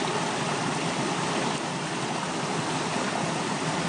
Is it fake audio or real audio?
real